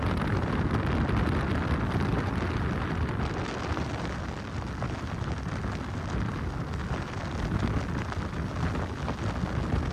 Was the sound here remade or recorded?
recorded